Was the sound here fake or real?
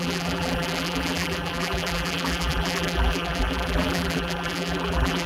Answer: fake